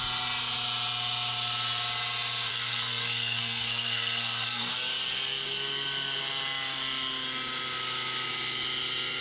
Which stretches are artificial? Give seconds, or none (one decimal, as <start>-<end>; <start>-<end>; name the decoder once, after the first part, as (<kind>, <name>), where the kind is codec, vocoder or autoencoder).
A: 2.5-4.7 (codec, SNAC)